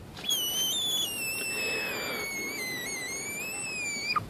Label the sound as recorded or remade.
recorded